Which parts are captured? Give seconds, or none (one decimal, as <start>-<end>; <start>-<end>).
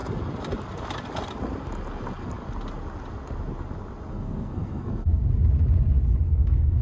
0.0-4.1; 5.2-6.2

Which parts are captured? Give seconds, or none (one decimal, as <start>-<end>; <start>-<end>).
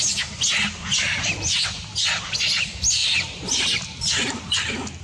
0.0-5.0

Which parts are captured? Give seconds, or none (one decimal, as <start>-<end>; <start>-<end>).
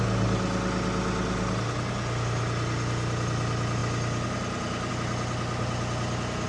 0.0-6.5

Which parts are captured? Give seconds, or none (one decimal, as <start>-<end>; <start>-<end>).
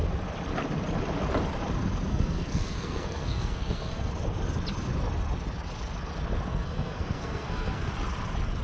0.0-2.1; 4.1-6.5; 7.9-8.6